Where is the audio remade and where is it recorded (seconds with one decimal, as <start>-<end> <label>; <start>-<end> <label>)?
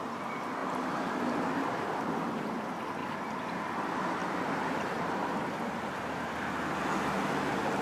0.0-0.6 recorded; 0.6-2.5 remade; 2.5-3.0 recorded; 3.0-3.5 remade; 3.5-4.2 recorded; 4.2-5.4 remade; 5.4-7.8 recorded